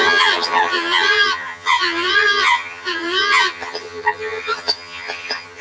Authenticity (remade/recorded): remade